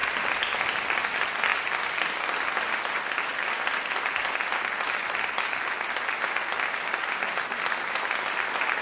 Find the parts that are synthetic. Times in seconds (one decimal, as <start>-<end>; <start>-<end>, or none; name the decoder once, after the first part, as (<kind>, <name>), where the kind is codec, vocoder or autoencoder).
none